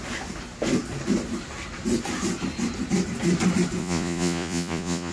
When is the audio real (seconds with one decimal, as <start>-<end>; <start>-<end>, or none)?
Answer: 0.0-3.8